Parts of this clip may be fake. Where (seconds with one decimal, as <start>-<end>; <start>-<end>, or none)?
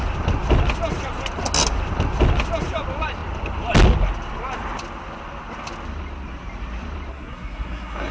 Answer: 7.1-8.1